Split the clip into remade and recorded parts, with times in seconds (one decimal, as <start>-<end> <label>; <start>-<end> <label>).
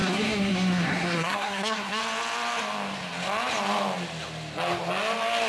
0.0-2.0 remade; 2.0-5.5 recorded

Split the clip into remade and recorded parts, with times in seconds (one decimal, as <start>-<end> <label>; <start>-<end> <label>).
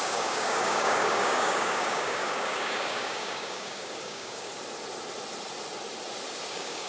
0.0-4.5 remade; 4.5-6.5 recorded; 6.5-6.9 remade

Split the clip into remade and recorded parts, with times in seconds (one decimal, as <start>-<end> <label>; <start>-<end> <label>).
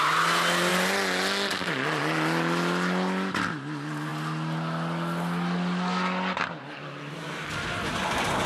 0.0-8.5 recorded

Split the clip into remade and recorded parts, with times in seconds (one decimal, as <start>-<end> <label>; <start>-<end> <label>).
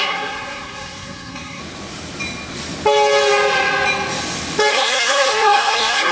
0.0-1.6 remade; 1.6-4.7 recorded; 4.7-6.1 remade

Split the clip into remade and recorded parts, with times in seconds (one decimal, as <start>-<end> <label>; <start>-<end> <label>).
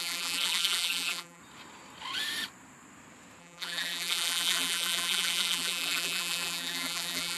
0.0-1.4 remade; 1.4-3.4 recorded; 3.4-7.4 remade